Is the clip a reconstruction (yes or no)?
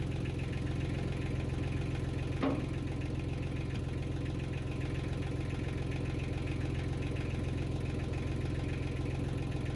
no